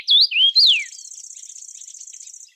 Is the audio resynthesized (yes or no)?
no